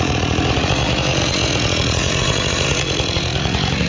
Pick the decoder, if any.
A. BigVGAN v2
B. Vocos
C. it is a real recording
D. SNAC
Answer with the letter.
B